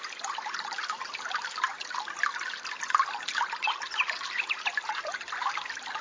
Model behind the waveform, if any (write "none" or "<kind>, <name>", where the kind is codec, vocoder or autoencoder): none